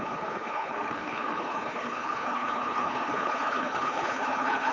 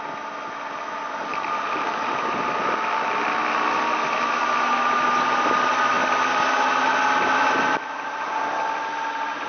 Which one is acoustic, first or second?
second